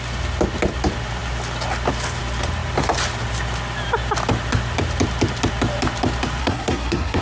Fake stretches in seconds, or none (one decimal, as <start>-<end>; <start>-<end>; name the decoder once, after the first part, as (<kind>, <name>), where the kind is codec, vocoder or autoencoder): 6.4-7.2 (codec, SNAC)